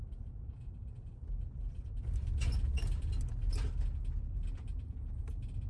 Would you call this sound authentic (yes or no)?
yes